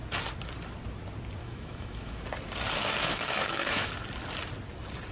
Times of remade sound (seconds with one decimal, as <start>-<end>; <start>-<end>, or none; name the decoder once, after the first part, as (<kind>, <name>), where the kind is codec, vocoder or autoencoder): 1.4-2.2 (autoencoder, DAC-VAE); 3.0-3.9